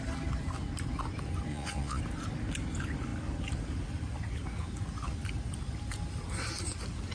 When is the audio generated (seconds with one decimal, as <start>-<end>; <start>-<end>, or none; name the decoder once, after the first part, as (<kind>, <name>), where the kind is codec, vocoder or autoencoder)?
1.5-2.0 (vocoder, Vocos)